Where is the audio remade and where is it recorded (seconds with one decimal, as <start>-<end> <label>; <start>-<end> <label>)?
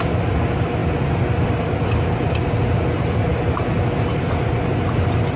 0.0-5.4 recorded